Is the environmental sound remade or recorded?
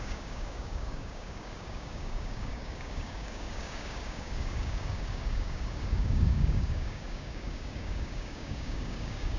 remade